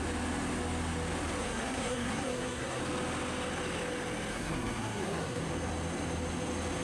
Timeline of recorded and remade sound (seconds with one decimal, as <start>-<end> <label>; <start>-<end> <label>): 0.0-1.4 recorded; 1.4-2.8 remade; 2.8-4.3 recorded; 4.3-5.4 remade; 5.4-6.8 recorded